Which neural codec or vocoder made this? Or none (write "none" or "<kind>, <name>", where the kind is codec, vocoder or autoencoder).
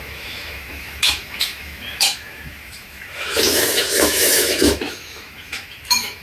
autoencoder, DAC-VAE